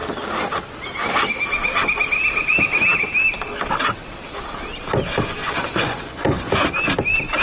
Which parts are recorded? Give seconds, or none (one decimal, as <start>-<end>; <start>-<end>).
0.0-5.4; 6.5-7.4